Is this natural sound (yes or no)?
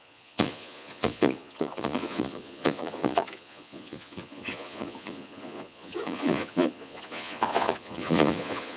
no